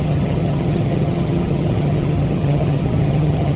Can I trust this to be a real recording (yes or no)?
no